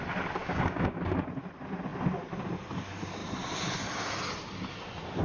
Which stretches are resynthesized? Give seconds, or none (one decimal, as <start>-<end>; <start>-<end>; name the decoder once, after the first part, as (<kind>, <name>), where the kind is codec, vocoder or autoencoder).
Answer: 0.4-1.0 (codec, DAC)